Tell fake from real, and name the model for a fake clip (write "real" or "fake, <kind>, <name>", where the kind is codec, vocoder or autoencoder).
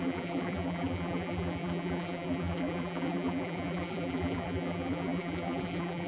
fake, vocoder, BigVGAN v2